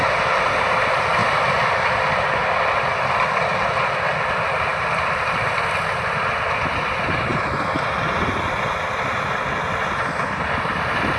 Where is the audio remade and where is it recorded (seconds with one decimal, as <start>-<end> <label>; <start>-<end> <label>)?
0.0-1.2 recorded; 1.2-2.4 remade; 2.4-4.7 recorded; 4.7-5.5 remade; 5.5-7.3 recorded; 7.3-7.9 remade; 7.9-11.2 recorded